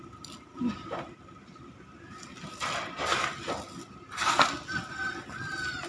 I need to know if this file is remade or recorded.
recorded